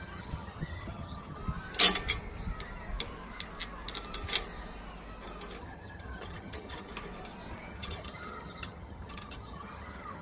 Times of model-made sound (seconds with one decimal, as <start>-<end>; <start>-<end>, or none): 0.0-1.4; 5.6-6.9; 7.7-10.2